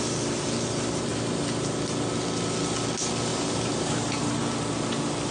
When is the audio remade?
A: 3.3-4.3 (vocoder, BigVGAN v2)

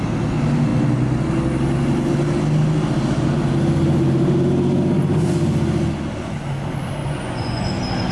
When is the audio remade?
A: 7.0-7.6 (vocoder, Vocos)

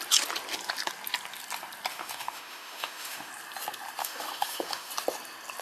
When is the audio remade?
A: 1.9-3.3 (autoencoder, DAC-VAE); 4.0-4.9

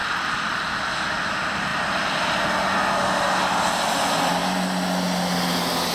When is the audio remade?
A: 0.0-0.8 (vocoder, BigVGAN v2)

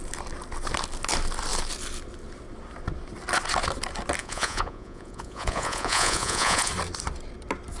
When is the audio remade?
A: 4.2-6.7 (vocoder, Vocos)

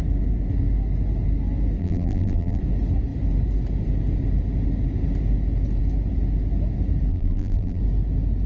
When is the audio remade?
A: 1.8-2.6 (vocoder, BigVGAN v2); 7.1-7.8